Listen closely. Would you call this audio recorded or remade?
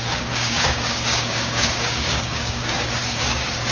remade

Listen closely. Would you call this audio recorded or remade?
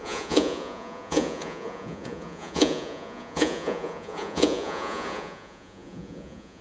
remade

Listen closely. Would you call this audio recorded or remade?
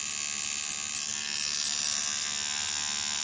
recorded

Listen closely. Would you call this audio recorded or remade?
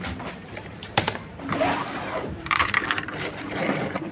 remade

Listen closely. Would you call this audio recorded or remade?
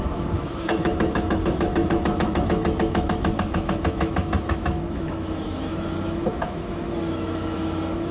remade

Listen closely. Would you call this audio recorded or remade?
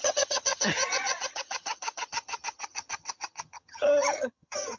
remade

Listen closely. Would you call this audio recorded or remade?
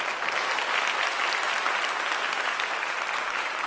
recorded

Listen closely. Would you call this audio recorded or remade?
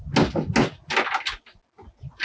recorded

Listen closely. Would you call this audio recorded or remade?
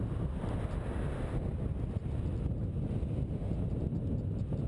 recorded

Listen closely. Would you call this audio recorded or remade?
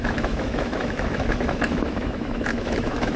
remade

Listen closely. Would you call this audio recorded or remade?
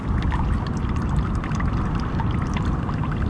recorded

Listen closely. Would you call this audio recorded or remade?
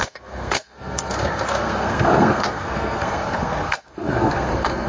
remade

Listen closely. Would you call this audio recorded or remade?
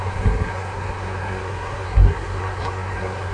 remade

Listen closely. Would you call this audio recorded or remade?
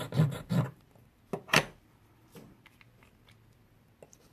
recorded